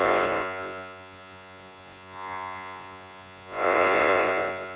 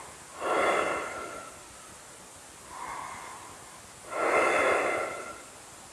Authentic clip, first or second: second